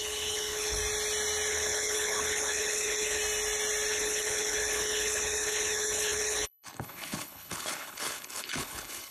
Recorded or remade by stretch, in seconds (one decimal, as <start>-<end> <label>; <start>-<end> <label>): 0.0-0.8 remade; 0.8-1.5 recorded; 1.5-3.2 remade; 3.2-3.9 recorded; 3.9-9.1 remade